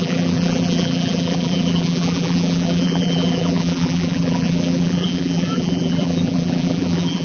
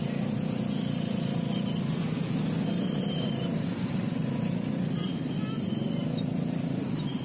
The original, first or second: second